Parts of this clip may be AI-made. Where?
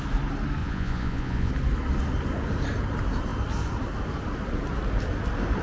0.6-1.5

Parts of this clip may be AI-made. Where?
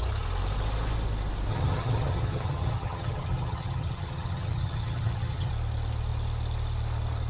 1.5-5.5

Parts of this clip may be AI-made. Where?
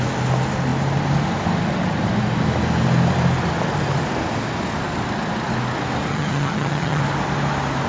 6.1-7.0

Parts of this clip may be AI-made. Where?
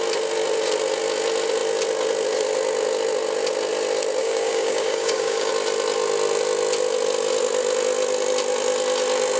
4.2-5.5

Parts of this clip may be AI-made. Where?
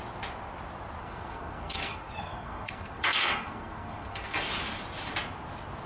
1.0-4.5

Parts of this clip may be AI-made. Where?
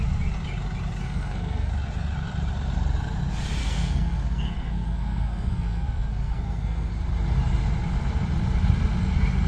1.0-1.7; 3.6-6.9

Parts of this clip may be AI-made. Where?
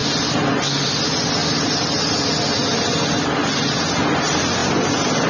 none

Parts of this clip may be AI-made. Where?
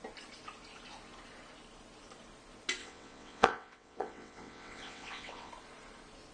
2.8-5.5